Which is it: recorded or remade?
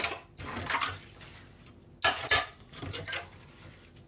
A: recorded